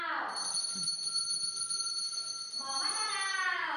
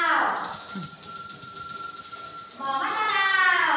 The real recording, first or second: second